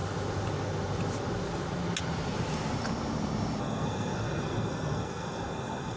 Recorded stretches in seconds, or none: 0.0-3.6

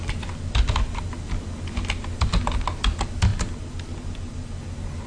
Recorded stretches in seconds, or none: 0.0-5.1